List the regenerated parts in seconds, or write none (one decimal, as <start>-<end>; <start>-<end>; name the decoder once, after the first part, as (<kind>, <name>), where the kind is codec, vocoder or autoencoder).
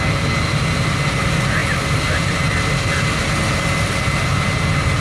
none